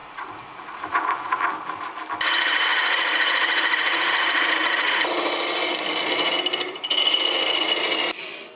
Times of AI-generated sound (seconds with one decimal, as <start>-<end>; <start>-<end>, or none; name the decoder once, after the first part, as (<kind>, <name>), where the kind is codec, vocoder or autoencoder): 0.0-1.4 (vocoder, Vocos); 2.7-5.0